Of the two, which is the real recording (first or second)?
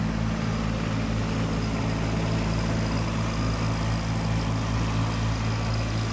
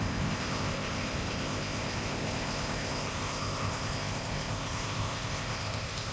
first